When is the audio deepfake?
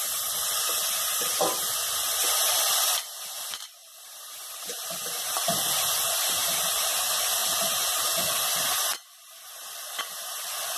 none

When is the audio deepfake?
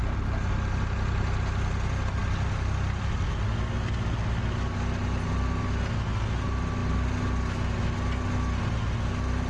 none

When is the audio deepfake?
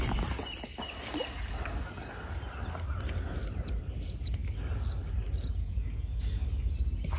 5.6-6.7 (codec, DAC)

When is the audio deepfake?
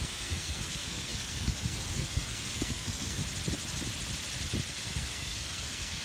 0.0-3.2 (codec, SNAC); 4.7-6.0